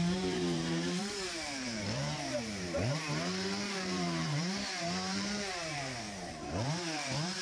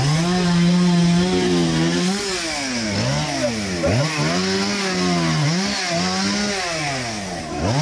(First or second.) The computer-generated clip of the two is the first